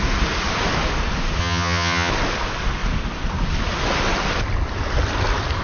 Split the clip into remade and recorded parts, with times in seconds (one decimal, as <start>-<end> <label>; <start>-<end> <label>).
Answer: 0.0-1.4 recorded; 1.4-2.1 remade; 2.1-5.6 recorded